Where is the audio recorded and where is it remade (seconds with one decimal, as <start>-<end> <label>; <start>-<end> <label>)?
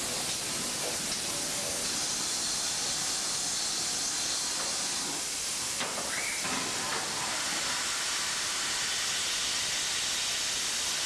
0.0-11.1 recorded